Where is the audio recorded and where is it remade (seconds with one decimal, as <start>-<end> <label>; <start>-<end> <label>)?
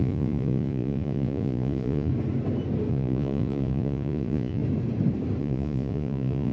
0.0-2.1 remade; 2.1-2.9 recorded; 2.9-4.6 remade; 4.6-5.4 recorded; 5.4-6.5 remade